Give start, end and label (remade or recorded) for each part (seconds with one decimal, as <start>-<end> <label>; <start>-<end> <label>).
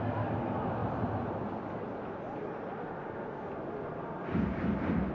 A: 0.0-5.1 recorded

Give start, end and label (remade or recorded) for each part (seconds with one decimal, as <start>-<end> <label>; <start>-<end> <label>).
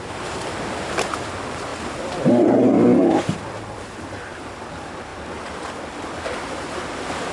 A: 0.0-1.7 recorded; 1.7-3.6 remade; 3.6-7.3 recorded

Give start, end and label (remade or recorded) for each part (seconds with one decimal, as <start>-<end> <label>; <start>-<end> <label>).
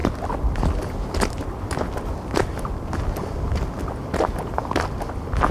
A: 0.0-5.5 recorded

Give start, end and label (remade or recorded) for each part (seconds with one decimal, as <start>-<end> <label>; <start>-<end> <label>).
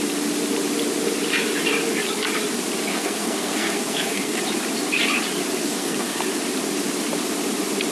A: 0.0-2.9 recorded; 2.9-4.4 remade; 4.4-5.6 recorded; 5.6-6.2 remade; 6.2-7.9 recorded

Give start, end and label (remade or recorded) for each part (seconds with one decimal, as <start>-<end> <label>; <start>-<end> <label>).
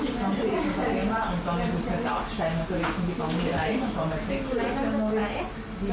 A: 0.0-5.9 recorded